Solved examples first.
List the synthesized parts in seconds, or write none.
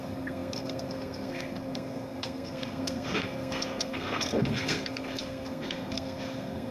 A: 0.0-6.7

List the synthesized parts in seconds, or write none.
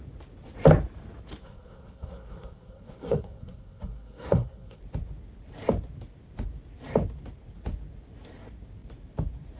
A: 1.4-4.8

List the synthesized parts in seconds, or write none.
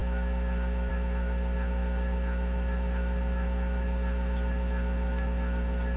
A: none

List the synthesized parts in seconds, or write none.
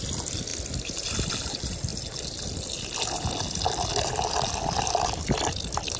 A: none